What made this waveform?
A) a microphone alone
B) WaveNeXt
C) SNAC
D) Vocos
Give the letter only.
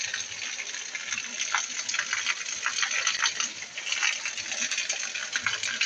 A